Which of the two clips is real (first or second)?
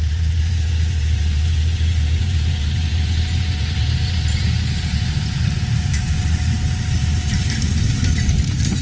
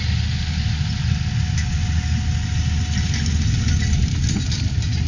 second